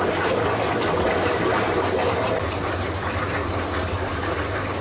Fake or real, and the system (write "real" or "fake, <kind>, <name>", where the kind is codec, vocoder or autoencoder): real